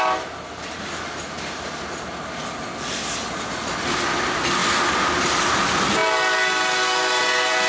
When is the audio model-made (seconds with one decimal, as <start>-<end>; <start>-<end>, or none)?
none